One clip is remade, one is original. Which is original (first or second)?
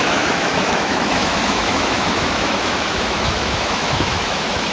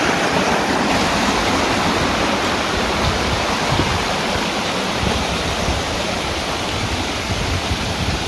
second